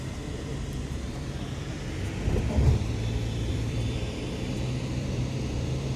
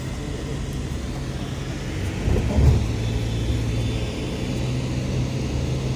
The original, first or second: second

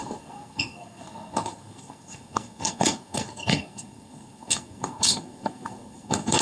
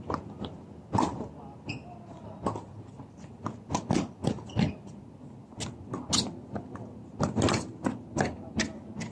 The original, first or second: second